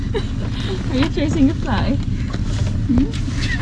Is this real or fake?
real